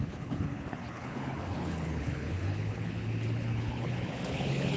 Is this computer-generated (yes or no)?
yes